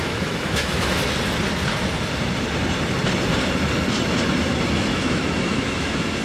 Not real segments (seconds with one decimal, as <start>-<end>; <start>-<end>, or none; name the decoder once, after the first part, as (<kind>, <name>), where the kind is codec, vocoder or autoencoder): 0.0-1.0 (autoencoder, DAC-VAE); 4.7-6.2